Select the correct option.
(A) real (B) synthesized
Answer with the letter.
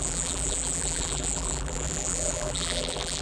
B